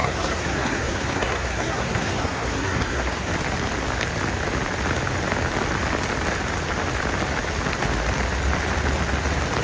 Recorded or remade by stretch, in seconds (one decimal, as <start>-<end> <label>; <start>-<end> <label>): 0.0-3.3 remade; 3.3-9.6 recorded